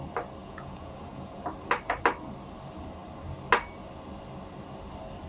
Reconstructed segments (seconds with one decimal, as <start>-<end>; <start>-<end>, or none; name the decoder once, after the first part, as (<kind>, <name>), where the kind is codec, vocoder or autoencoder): 0.4-1.4 (vocoder, Vocos)